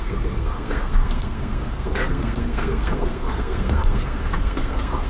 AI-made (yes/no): yes